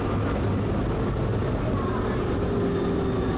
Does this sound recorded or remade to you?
recorded